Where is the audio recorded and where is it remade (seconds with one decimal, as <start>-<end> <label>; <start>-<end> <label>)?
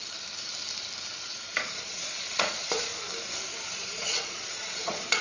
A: 0.0-1.2 recorded; 1.2-2.9 remade; 2.9-3.8 recorded; 3.8-5.2 remade